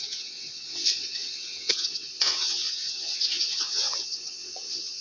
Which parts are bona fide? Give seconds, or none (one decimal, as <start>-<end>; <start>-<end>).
none